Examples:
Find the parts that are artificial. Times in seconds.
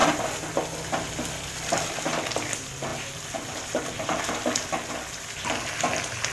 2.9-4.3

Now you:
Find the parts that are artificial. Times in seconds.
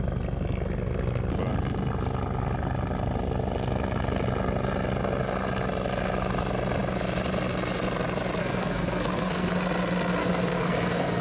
8.4-9.6; 10.2-11.2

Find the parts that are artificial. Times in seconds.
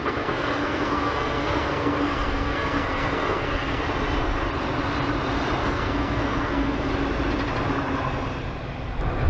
0.0-3.8; 5.6-6.9